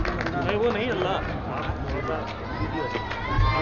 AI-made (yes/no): no